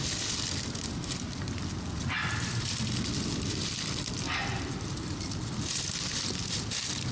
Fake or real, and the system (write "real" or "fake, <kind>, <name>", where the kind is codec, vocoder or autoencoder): real